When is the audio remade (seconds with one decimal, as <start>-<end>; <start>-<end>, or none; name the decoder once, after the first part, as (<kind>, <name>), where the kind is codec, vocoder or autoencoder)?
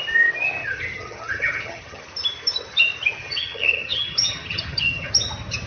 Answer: 0.6-2.0 (vocoder, HiFi-GAN); 3.2-5.1